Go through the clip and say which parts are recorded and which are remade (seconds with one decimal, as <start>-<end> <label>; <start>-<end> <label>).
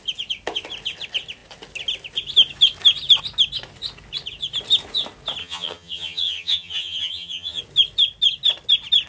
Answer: 0.0-5.4 recorded; 5.4-7.6 remade; 7.6-9.1 recorded